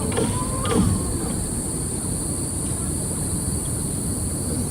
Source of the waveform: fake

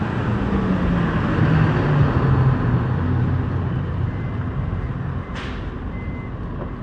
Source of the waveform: real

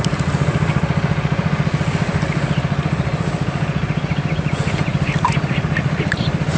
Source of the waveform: fake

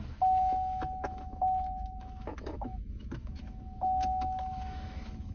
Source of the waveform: fake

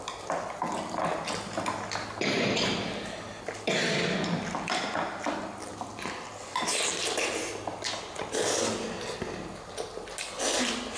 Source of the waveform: real